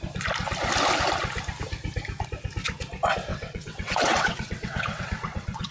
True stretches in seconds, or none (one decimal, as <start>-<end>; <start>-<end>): 0.0-3.3